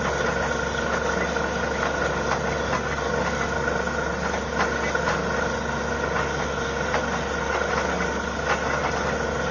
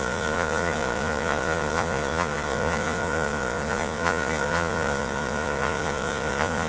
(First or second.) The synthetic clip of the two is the second